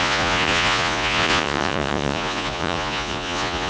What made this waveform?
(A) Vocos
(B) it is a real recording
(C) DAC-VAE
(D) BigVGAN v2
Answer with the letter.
A